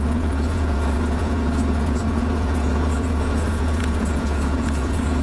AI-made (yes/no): yes